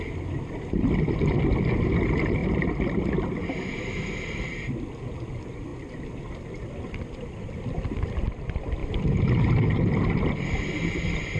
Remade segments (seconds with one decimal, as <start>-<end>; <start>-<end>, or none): none